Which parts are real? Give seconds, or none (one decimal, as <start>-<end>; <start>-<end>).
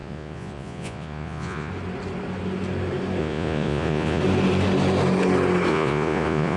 1.7-3.2; 4.2-5.7